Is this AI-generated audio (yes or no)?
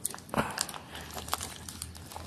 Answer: no